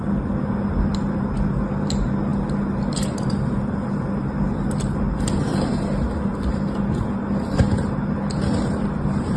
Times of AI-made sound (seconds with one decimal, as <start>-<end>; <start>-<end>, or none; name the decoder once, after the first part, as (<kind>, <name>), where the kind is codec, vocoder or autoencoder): none